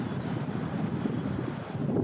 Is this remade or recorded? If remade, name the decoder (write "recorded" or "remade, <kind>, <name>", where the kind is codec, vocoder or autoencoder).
recorded